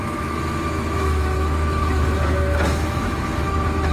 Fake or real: fake